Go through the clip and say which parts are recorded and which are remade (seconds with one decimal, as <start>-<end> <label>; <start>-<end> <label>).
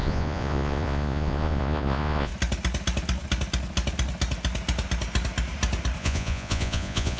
0.0-2.3 remade; 2.3-6.0 recorded; 6.0-7.2 remade